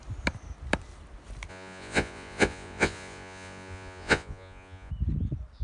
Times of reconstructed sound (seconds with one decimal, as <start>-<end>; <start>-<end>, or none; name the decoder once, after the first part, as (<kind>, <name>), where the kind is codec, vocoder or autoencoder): 1.5-4.9 (vocoder, Vocos)